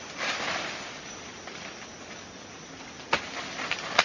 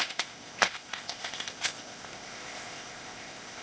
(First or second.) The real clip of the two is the first